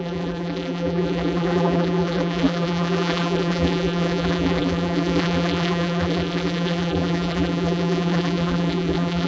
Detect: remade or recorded remade